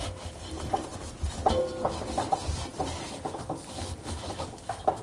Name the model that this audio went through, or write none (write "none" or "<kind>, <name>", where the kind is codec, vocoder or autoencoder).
none